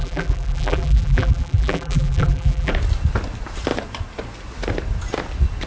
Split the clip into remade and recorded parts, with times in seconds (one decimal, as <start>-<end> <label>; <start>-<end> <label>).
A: 0.0-2.7 remade; 2.7-5.7 recorded